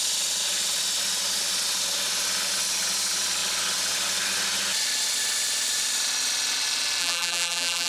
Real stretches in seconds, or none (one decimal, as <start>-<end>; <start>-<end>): 0.0-7.0